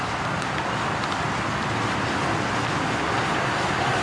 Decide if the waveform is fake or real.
real